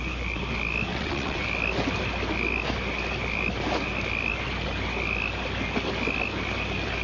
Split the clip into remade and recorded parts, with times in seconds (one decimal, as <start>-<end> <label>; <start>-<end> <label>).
0.0-0.9 recorded; 0.9-1.4 remade; 1.4-7.0 recorded